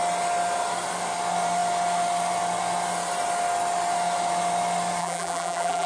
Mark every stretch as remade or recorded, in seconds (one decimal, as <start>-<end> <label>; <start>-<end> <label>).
0.0-5.0 recorded; 5.0-5.9 remade